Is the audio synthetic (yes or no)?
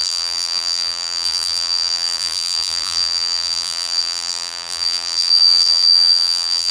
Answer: yes